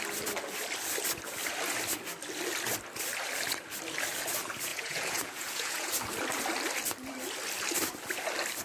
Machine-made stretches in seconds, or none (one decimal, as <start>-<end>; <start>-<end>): 4.7-5.9